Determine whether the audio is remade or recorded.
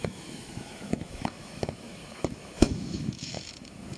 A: remade